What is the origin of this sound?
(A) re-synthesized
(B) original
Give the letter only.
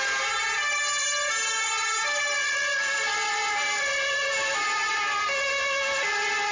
B